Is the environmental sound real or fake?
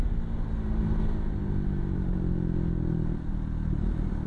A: real